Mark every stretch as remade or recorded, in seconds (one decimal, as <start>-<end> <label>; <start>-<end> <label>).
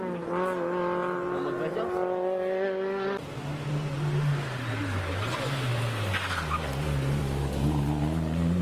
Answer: 0.0-8.6 recorded